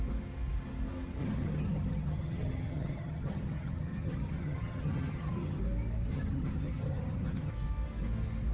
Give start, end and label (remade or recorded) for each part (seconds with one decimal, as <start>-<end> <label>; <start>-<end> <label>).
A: 0.0-1.2 recorded; 1.2-5.6 remade; 5.6-6.1 recorded; 6.1-7.5 remade; 7.5-8.5 recorded